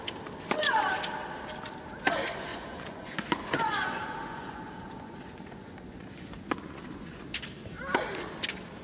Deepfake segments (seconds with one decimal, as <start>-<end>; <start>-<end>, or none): 2.5-7.2